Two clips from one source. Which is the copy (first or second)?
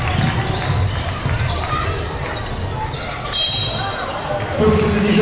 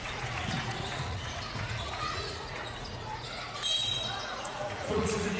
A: second